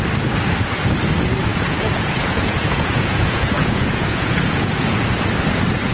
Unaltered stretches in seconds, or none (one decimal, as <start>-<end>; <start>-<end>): 0.0-1.5; 5.0-5.9